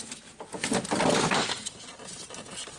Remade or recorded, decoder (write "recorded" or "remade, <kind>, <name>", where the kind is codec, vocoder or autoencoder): recorded